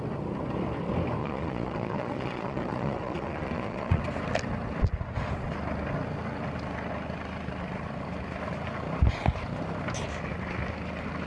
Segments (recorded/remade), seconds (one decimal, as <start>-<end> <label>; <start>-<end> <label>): 0.0-1.2 recorded; 1.2-4.0 remade; 4.0-11.3 recorded